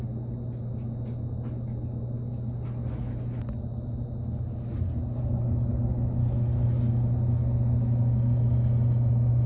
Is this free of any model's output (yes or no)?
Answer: yes